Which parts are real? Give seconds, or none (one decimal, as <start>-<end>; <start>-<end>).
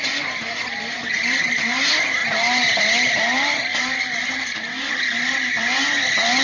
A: 0.0-6.4